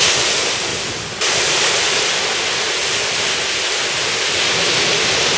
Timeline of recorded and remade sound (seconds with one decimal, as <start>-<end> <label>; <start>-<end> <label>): 0.0-5.4 recorded